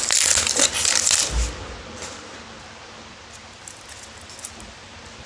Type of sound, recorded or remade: recorded